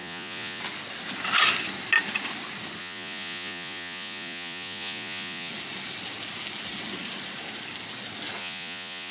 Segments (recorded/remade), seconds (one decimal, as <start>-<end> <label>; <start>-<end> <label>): 0.0-0.6 remade; 0.6-2.8 recorded; 2.8-5.5 remade; 5.5-8.4 recorded; 8.4-9.1 remade

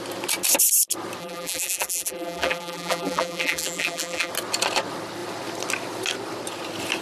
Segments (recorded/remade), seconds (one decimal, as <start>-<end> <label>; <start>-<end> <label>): 0.0-1.2 recorded; 1.2-4.3 remade; 4.3-7.0 recorded